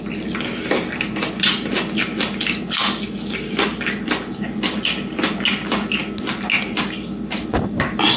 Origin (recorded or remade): recorded